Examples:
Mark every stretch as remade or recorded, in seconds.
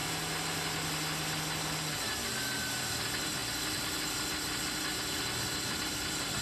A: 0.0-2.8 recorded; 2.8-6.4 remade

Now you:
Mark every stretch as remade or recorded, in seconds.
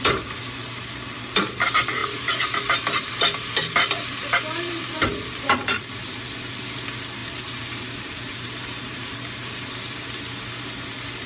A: 0.0-7.2 recorded; 7.2-9.5 remade; 9.5-11.3 recorded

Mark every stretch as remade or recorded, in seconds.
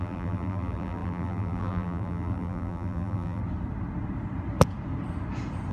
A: 0.0-3.4 remade; 3.4-5.7 recorded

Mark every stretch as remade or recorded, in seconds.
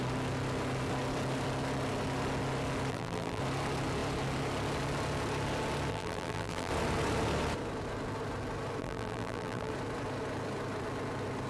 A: 0.0-2.9 recorded; 2.9-3.4 remade; 3.4-5.9 recorded; 5.9-6.7 remade; 6.7-8.8 recorded; 8.8-9.7 remade; 9.7-11.5 recorded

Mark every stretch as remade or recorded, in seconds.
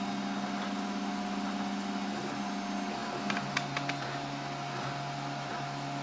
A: 0.0-6.0 recorded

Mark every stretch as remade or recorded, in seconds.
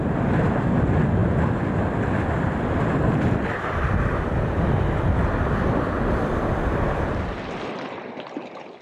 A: 0.0-1.2 remade; 1.2-2.4 recorded; 2.4-8.8 remade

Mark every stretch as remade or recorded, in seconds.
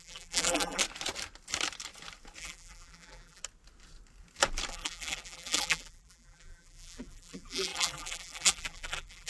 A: 0.0-0.8 remade; 0.8-2.4 recorded; 2.4-3.4 remade; 3.4-4.7 recorded; 4.7-9.3 remade